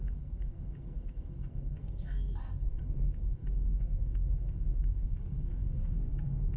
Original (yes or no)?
no